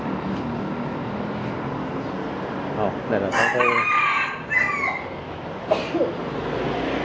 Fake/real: real